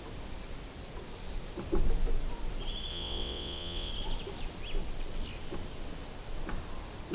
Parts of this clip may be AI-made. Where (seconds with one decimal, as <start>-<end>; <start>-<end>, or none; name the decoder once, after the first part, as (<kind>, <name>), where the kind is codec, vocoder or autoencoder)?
2.9-3.9 (vocoder, WaveNeXt)